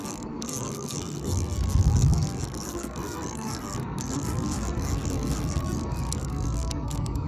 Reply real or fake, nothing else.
fake